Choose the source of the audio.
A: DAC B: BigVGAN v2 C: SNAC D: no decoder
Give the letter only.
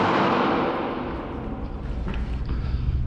D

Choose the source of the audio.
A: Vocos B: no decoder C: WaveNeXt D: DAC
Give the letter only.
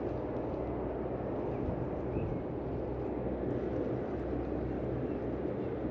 B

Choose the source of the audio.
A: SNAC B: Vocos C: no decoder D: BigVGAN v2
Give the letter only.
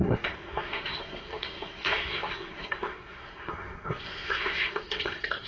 A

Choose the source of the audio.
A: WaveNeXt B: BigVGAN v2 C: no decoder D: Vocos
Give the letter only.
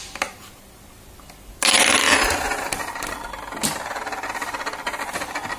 C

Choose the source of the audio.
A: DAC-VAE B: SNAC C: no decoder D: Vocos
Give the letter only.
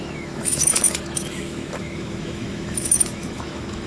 A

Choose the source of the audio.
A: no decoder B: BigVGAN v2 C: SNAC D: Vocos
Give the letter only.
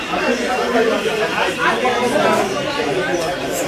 A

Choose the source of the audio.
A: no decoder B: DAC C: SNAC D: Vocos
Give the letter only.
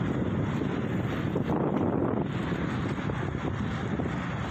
A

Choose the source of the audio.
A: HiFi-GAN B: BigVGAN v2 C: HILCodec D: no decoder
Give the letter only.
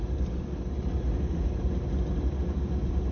D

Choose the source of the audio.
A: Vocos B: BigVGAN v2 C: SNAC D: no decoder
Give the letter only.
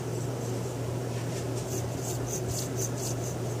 D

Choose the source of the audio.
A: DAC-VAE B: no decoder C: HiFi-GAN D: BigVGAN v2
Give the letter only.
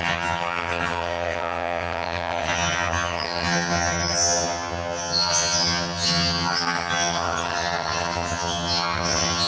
C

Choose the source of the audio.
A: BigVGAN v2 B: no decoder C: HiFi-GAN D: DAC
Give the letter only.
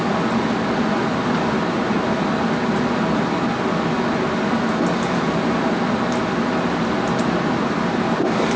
B